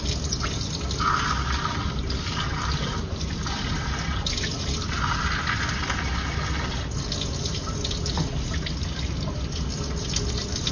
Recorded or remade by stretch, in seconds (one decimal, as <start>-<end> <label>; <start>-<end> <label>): 0.0-10.7 recorded